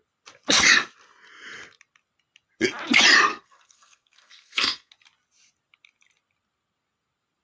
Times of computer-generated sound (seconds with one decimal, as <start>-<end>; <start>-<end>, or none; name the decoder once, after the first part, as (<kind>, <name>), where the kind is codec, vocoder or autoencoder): 3.3-4.9 (codec, SNAC)